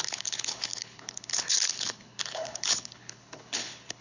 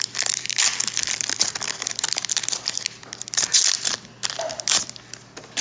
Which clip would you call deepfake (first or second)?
first